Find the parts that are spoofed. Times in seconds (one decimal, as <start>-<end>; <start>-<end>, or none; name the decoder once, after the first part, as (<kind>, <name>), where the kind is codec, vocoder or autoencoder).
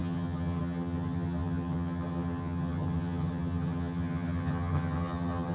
0.0-5.5 (vocoder, HiFi-GAN)